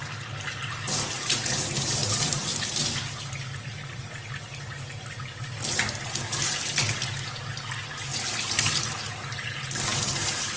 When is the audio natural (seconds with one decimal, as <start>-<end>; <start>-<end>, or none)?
0.0-10.6